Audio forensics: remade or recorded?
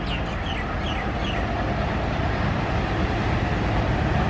recorded